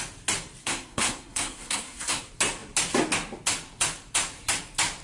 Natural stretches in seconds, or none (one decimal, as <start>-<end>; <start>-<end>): 0.0-0.6; 2.2-5.0